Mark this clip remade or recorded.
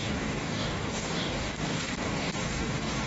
remade